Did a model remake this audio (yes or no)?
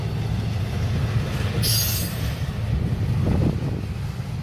no